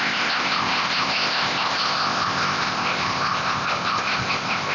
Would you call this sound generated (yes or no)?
yes